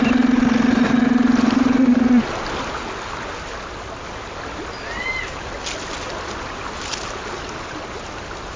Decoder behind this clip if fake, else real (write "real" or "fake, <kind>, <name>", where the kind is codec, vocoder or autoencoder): real